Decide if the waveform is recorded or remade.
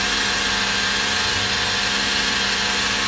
recorded